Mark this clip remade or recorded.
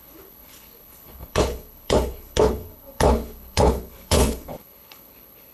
remade